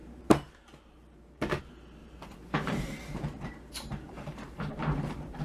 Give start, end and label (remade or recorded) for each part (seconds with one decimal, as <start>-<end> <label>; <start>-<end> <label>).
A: 0.0-1.6 remade; 1.6-2.0 recorded; 2.0-5.4 remade